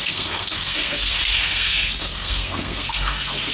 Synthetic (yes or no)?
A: yes